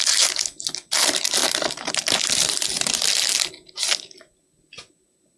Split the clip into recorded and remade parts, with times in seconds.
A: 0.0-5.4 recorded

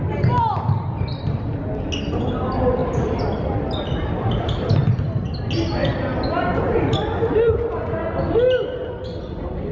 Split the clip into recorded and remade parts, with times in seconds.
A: 0.0-1.1 recorded; 1.1-1.6 remade; 1.6-2.8 recorded; 2.8-4.7 remade; 4.7-6.1 recorded; 6.1-8.2 remade; 8.2-9.7 recorded

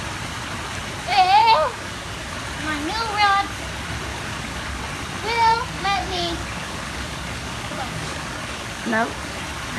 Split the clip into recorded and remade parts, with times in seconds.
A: 0.0-1.4 recorded; 1.4-2.3 remade; 2.3-4.1 recorded; 4.1-4.8 remade; 4.8-5.5 recorded; 5.5-9.4 remade; 9.4-9.8 recorded